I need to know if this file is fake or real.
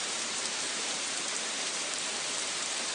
fake